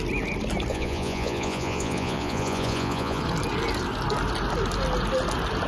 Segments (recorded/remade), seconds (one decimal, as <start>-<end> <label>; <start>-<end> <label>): 0.0-0.7 recorded; 0.7-3.2 remade; 3.2-5.7 recorded